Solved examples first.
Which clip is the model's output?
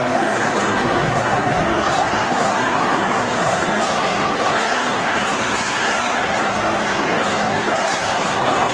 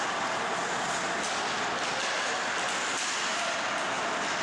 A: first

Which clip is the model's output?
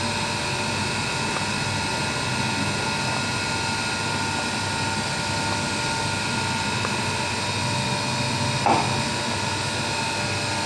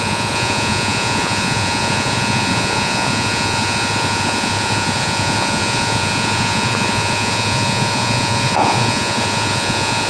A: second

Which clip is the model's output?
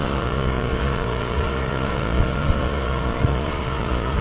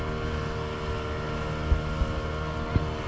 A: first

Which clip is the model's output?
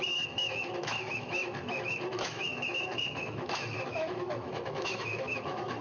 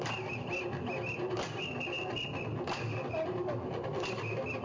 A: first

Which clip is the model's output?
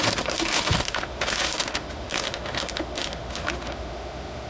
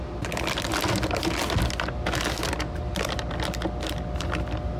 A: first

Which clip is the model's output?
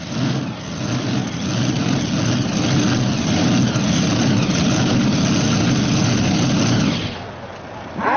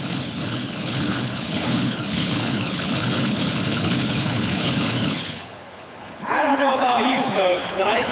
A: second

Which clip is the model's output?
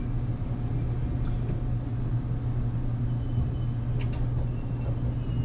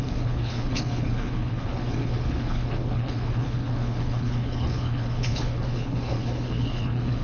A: second